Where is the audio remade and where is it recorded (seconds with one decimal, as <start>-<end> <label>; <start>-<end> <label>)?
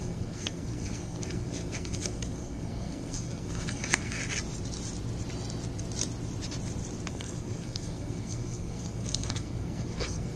0.0-4.2 remade; 4.2-7.1 recorded; 7.1-10.4 remade